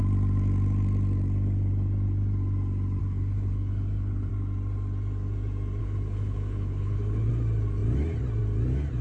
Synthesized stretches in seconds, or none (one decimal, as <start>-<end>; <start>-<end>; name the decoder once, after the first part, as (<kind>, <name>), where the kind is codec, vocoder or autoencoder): 3.0-4.3 (codec, HILCodec); 5.8-7.3